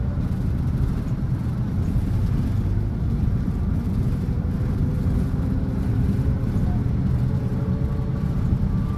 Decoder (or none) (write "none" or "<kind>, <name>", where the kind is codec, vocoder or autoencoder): vocoder, BigVGAN v2